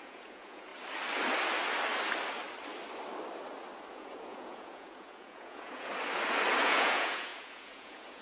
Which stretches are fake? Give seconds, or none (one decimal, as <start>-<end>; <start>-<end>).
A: 0.0-0.7; 3.9-5.9; 6.6-8.2

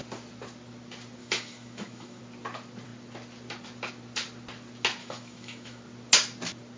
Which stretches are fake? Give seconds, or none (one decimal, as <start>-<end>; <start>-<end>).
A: 1.2-2.2; 5.0-5.8

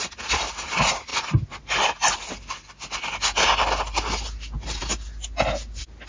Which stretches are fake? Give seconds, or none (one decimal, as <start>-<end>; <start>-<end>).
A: none